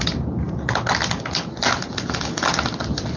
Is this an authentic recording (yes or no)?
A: yes